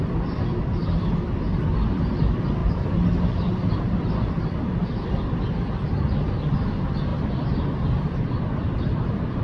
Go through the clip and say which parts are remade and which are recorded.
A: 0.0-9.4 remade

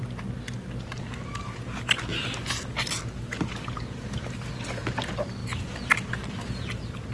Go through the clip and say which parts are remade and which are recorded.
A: 0.0-2.1 recorded; 2.1-3.0 remade; 3.0-5.4 recorded; 5.4-6.6 remade; 6.6-7.1 recorded

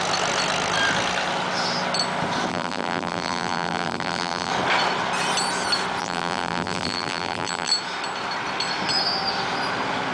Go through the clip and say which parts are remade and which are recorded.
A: 0.0-2.5 recorded; 2.5-4.5 remade; 4.5-6.0 recorded; 6.0-7.7 remade; 7.7-10.1 recorded

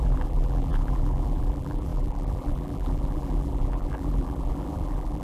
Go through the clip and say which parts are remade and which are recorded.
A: 0.0-5.2 remade